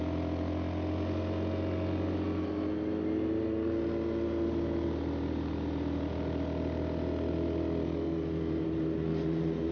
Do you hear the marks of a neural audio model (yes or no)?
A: no